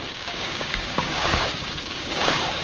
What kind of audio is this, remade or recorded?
remade